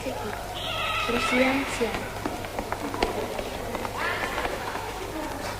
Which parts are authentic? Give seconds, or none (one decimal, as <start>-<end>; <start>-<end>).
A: 0.0-1.0; 2.0-4.4; 5.0-5.6